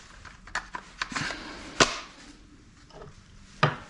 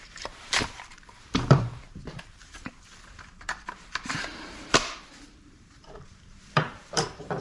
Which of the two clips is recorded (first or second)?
first